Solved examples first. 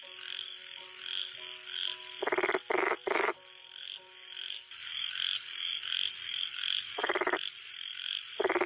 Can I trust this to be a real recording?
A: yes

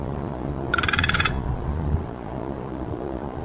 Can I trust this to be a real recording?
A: no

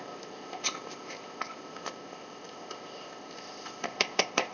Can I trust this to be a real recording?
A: no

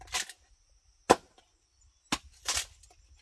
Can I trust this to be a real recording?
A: yes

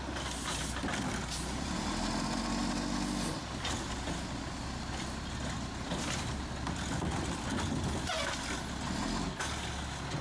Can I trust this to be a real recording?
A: yes